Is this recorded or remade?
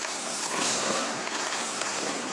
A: remade